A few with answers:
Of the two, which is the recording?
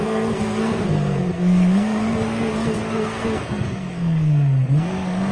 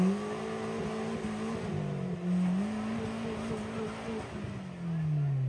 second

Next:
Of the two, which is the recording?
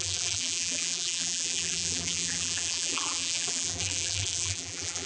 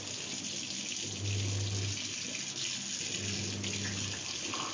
second